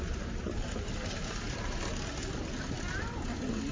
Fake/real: real